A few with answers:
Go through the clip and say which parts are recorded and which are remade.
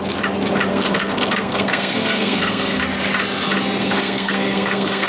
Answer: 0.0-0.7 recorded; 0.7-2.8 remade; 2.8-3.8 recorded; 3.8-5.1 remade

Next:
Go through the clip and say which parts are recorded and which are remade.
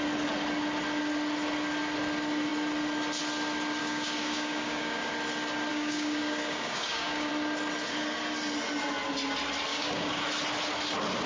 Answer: 0.0-3.8 recorded; 3.8-5.1 remade; 5.1-5.7 recorded; 5.7-7.3 remade; 7.3-9.7 recorded; 9.7-10.2 remade; 10.2-11.3 recorded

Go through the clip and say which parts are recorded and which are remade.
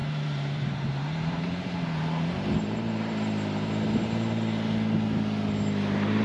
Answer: 0.0-3.7 remade; 3.7-6.2 recorded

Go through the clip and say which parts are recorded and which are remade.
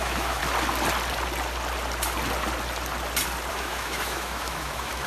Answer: 0.0-0.4 remade; 0.4-3.5 recorded; 3.5-5.1 remade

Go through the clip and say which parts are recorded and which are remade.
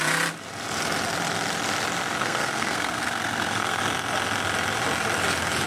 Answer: 0.0-2.2 recorded; 2.2-3.8 remade; 3.8-5.7 recorded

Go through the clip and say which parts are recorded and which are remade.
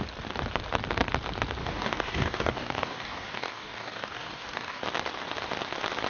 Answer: 0.0-1.6 recorded; 1.6-4.8 remade; 4.8-6.1 recorded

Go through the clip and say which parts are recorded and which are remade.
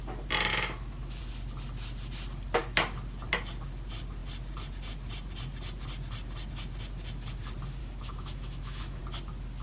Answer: 0.0-0.5 recorded; 0.5-1.2 remade; 1.2-7.8 recorded; 7.8-9.0 remade; 9.0-9.6 recorded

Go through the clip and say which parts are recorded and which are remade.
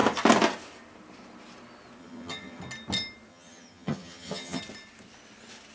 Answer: 0.0-2.0 recorded; 2.0-2.6 remade; 2.6-3.3 recorded; 3.3-4.6 remade; 4.6-5.7 recorded